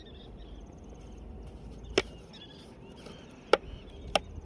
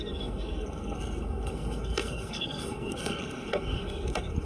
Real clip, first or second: first